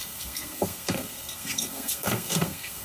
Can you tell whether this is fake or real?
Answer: fake